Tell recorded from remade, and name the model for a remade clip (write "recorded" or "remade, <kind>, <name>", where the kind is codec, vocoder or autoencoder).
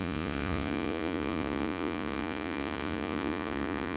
remade, vocoder, Vocos